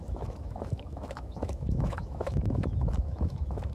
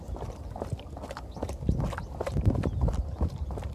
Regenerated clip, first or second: first